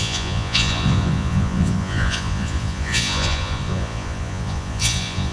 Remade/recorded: remade